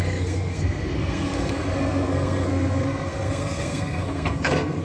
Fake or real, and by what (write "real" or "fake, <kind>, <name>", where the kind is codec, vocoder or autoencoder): fake, codec, SNAC